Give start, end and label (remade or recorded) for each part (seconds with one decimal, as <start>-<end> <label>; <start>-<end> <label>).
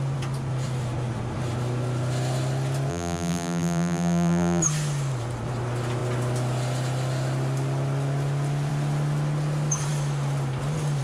0.0-2.9 recorded; 2.9-4.6 remade; 4.6-11.0 recorded